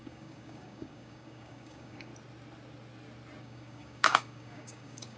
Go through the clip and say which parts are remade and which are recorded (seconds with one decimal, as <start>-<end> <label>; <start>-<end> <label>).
0.0-2.1 remade; 2.1-3.4 recorded; 3.4-5.2 remade